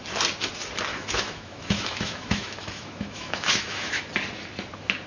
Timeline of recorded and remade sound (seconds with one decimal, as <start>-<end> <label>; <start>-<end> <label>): 0.0-0.9 recorded; 0.9-4.0 remade; 4.0-5.1 recorded